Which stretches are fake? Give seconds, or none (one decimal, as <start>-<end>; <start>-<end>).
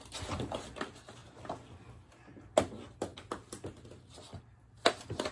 none